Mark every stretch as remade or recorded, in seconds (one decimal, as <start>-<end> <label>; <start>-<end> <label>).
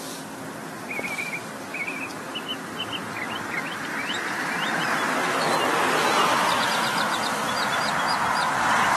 0.0-9.0 recorded